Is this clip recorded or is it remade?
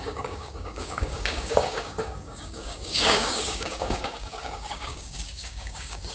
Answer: remade